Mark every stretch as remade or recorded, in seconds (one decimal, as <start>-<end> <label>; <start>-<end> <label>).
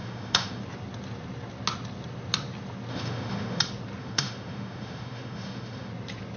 0.0-0.6 remade; 0.6-2.9 recorded; 2.9-3.6 remade; 3.6-4.0 recorded; 4.0-5.9 remade; 5.9-6.4 recorded